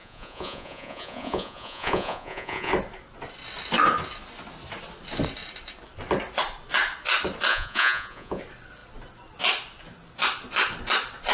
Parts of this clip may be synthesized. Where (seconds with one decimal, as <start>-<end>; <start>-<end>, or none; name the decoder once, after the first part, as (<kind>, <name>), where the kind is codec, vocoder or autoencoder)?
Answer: 0.0-2.7 (vocoder, Vocos); 7.5-8.4